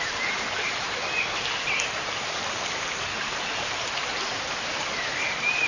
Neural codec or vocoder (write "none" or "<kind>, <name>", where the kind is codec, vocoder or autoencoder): vocoder, BigVGAN v2